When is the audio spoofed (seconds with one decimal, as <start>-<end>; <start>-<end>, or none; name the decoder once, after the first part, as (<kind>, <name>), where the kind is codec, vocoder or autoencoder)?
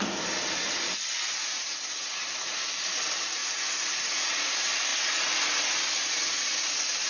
none